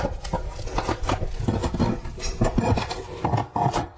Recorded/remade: recorded